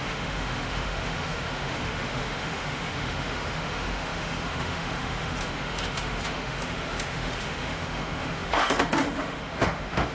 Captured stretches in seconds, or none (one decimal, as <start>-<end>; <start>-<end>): none